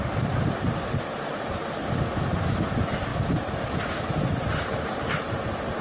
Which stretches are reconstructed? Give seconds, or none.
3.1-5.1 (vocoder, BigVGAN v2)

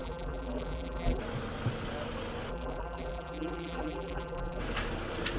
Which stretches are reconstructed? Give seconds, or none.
0.0-1.2 (vocoder, BigVGAN v2); 2.5-4.6

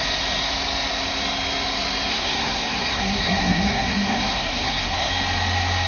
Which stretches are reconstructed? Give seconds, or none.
2.1-5.1 (codec, SNAC)

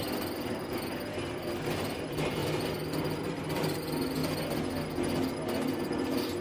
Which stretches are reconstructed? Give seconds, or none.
0.0-2.4 (vocoder, BigVGAN v2); 3.0-4.2; 5.8-6.4

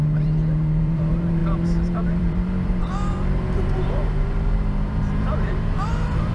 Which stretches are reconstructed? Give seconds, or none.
0.0-6.3 (vocoder, BigVGAN v2)

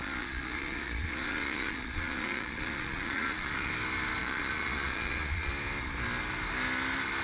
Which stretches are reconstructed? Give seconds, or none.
0.0-3.7 (vocoder, Vocos); 4.2-5.5

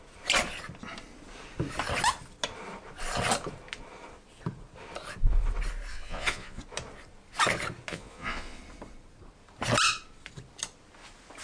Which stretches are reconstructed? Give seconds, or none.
5.9-6.6 (vocoder, Vocos); 7.9-8.6

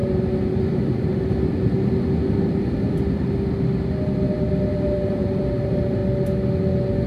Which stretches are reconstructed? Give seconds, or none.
0.6-1.1 (vocoder, BigVGAN v2); 5.1-6.0